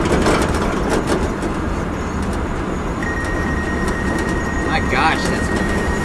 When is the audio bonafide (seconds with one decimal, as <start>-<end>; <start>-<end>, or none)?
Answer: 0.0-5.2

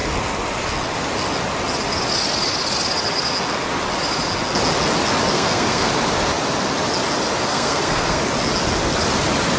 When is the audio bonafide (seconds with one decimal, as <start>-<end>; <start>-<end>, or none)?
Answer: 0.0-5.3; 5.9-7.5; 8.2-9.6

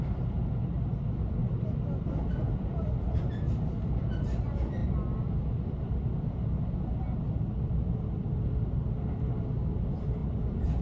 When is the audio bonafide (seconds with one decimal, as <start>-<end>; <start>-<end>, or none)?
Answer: 0.0-1.4; 3.2-10.8

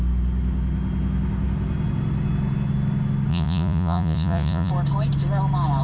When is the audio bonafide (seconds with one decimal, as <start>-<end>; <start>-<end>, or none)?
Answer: 0.0-3.3; 4.7-5.8

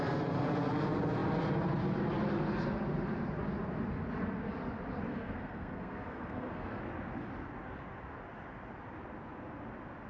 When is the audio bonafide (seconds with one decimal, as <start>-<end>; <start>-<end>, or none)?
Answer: 0.0-5.1; 6.8-10.1

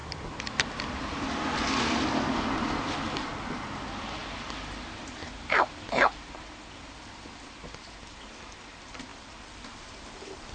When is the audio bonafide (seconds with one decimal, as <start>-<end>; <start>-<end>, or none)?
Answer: none

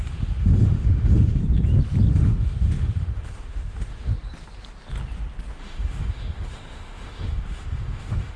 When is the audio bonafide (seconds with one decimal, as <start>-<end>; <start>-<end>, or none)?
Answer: 1.4-2.1; 4.1-5.5